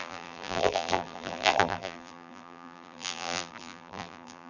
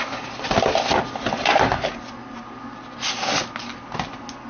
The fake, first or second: first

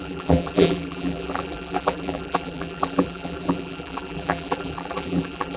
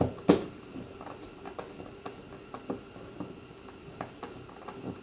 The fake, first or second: first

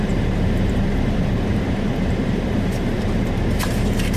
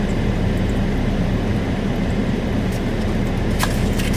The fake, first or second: first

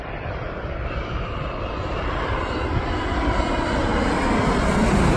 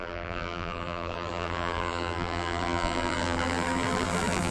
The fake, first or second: second